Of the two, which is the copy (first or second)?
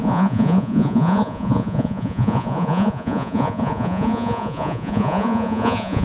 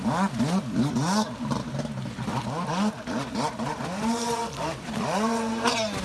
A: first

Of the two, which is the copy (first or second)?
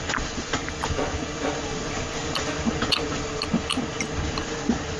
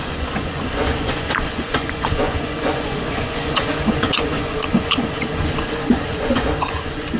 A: second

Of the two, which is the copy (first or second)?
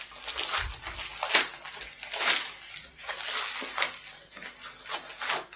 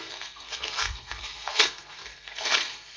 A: second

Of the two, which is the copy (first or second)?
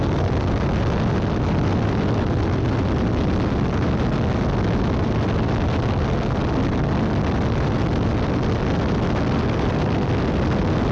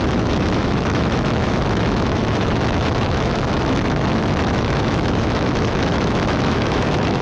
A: second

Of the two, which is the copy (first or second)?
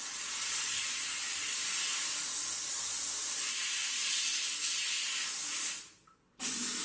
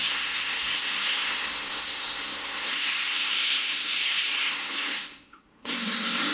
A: second